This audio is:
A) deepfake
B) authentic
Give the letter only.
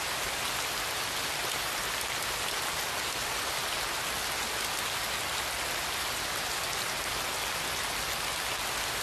B